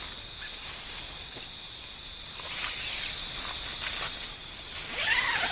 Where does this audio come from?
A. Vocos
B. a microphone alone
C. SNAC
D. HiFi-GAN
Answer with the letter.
B